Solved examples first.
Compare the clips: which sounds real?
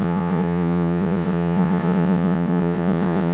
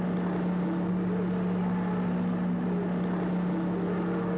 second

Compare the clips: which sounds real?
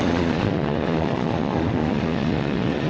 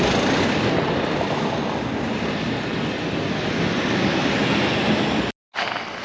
second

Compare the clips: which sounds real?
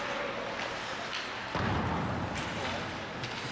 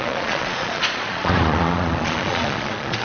first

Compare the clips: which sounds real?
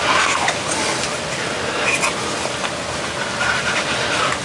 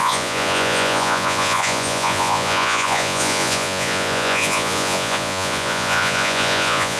first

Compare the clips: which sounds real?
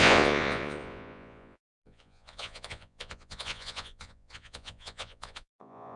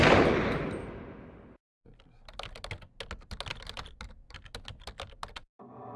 second